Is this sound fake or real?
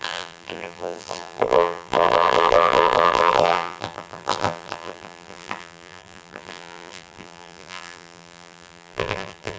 fake